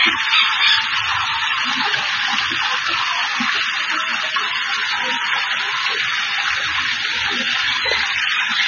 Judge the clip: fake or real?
real